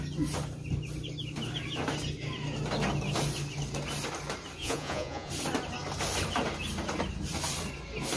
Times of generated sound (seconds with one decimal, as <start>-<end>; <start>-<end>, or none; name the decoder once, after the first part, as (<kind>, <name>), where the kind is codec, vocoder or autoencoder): 4.6-5.3 (vocoder, Vocos)